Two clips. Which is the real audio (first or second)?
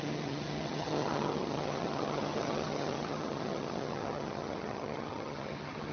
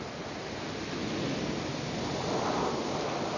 second